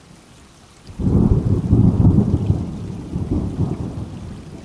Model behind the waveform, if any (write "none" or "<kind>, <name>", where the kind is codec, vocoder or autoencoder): none